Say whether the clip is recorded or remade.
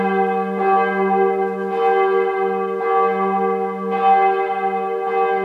recorded